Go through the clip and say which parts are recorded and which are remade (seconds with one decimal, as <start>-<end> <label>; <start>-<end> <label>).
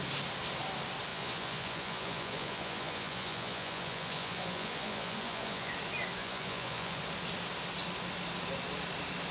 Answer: 0.0-1.1 recorded; 1.1-5.7 remade; 5.7-6.2 recorded; 6.2-7.0 remade; 7.0-9.3 recorded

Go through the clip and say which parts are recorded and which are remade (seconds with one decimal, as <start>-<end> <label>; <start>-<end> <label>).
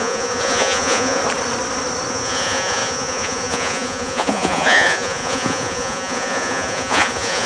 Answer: 0.0-1.2 remade; 1.2-2.1 recorded; 2.1-7.5 remade